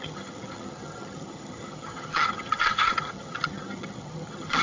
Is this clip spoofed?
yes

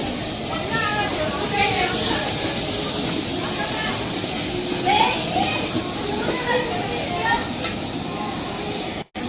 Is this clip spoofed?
no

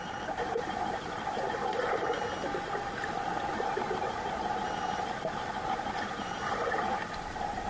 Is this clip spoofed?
no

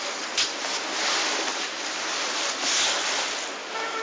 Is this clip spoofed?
no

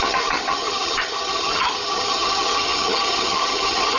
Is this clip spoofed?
yes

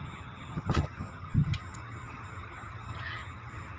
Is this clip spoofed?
yes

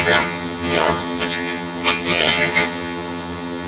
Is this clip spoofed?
yes